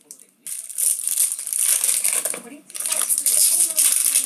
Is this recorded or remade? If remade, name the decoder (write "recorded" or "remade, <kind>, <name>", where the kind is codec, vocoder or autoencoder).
recorded